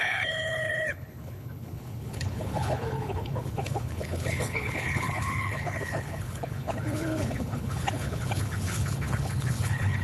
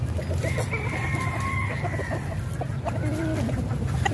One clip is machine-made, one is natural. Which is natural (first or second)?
second